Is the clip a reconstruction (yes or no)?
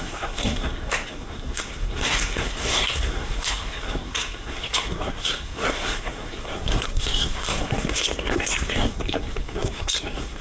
yes